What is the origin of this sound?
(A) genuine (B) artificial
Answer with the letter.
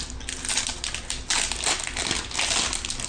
A